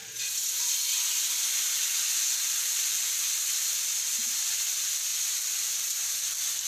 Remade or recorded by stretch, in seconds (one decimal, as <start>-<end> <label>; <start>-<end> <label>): 0.0-2.3 recorded; 2.3-3.1 remade; 3.1-5.1 recorded; 5.1-5.8 remade; 5.8-6.7 recorded